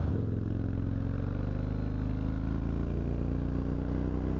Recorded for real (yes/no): yes